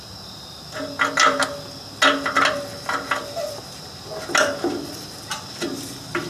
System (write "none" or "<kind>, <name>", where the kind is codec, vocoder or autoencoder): none